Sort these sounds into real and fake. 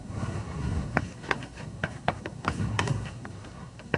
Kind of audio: fake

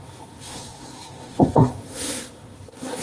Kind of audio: fake